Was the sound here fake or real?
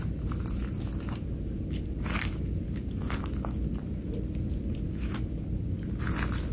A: real